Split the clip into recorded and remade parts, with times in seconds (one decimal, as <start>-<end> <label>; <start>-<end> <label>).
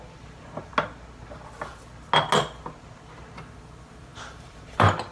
0.0-4.1 recorded; 4.1-5.1 remade